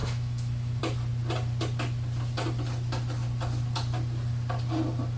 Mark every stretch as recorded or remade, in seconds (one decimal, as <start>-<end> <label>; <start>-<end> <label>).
0.0-0.8 remade; 0.8-5.2 recorded